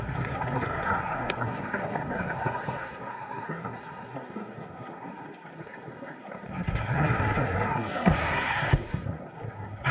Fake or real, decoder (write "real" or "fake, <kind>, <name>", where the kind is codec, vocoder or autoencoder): fake, codec, SNAC